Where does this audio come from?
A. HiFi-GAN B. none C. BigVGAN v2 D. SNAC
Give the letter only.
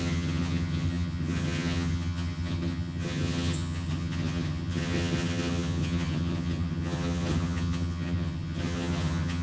A